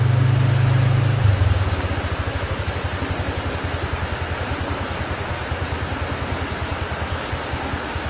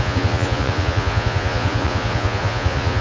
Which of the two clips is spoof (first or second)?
second